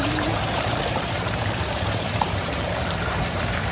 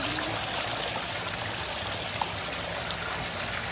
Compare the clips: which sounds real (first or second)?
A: second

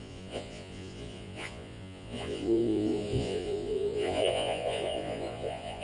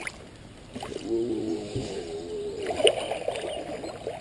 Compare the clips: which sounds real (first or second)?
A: second